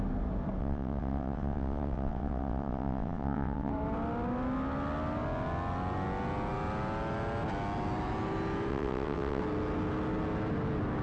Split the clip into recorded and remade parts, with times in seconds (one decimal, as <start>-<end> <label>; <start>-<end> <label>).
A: 0.0-0.6 recorded; 0.6-3.7 remade; 3.7-8.7 recorded; 8.7-9.4 remade; 9.4-11.0 recorded